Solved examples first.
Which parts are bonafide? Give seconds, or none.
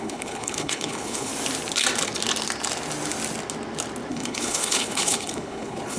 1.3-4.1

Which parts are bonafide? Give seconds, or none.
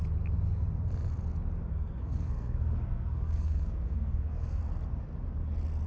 0.0-1.7; 4.6-5.9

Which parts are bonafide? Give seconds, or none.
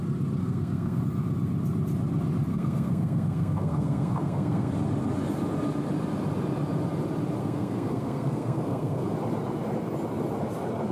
0.0-0.4; 1.0-2.5; 4.7-7.4; 9.1-10.9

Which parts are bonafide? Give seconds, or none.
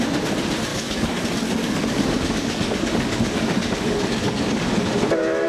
0.0-0.7; 1.2-1.6; 4.9-5.5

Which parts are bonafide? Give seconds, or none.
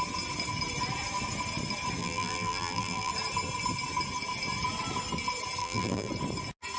0.0-2.0; 3.1-5.6; 6.1-6.8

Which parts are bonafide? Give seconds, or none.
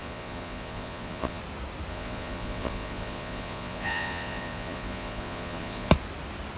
1.4-1.9; 5.9-6.6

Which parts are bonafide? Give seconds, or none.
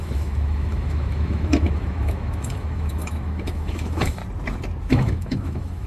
4.2-4.9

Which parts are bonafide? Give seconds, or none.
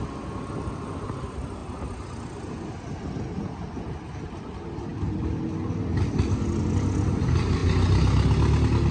0.0-8.9